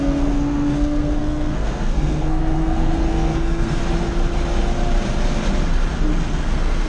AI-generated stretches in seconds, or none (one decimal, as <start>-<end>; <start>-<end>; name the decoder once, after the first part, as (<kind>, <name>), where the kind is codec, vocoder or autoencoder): 0.0-3.8 (codec, SNAC); 6.1-6.9